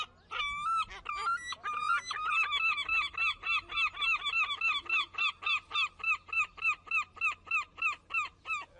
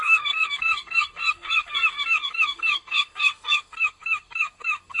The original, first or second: first